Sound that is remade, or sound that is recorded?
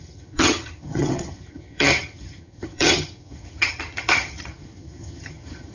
remade